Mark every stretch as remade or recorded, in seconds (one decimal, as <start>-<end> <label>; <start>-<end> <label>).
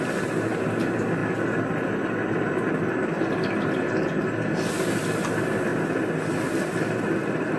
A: 0.0-5.7 remade; 5.7-6.6 recorded; 6.6-7.6 remade